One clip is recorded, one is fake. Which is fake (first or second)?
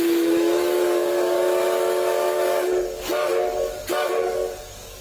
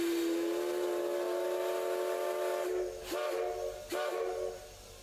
first